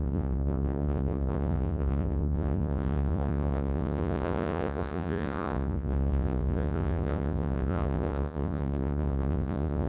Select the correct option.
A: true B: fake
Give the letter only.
B